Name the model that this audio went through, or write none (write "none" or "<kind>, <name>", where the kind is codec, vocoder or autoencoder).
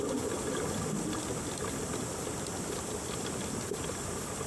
none